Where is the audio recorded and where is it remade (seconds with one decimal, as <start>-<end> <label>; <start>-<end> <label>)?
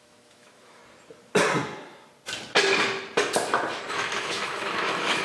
0.0-0.8 remade; 0.8-3.9 recorded; 3.9-5.2 remade